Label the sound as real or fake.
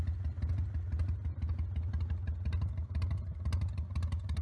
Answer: real